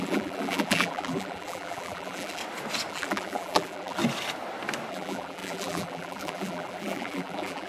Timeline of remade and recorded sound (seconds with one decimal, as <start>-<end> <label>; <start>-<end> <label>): 0.0-2.4 remade; 2.4-2.9 recorded; 2.9-4.0 remade; 4.0-4.9 recorded; 4.9-7.7 remade